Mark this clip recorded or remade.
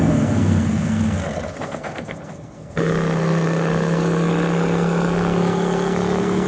remade